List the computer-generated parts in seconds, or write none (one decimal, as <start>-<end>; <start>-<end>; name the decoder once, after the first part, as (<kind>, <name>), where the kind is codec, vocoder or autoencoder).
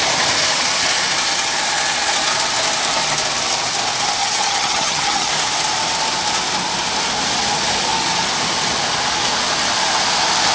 4.2-5.3 (vocoder, HiFi-GAN)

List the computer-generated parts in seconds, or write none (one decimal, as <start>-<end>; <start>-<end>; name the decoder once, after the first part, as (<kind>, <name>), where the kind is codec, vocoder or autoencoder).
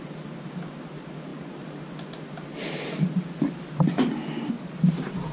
none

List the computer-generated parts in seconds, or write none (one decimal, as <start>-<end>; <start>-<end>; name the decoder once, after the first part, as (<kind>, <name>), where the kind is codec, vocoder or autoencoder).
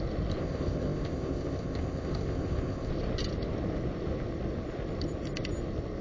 0.4-2.9 (codec, ZipCodec)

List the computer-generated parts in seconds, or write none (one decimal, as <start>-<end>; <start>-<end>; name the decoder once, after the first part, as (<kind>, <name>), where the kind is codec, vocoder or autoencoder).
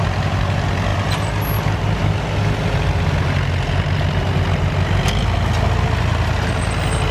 none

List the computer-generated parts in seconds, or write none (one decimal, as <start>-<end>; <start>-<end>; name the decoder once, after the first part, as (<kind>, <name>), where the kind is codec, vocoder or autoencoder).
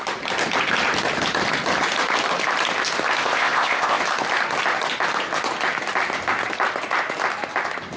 3.2-4.0 (codec, ZipCodec)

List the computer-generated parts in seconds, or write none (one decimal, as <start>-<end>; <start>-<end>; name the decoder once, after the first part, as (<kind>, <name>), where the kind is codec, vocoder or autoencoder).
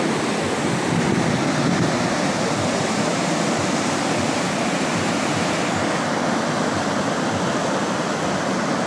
0.0-8.9 (vocoder, BigVGAN v2)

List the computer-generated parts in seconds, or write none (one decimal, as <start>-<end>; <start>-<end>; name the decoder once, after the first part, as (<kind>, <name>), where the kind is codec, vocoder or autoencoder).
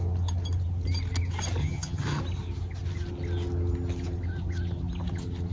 1.6-2.2 (vocoder, HiFi-GAN)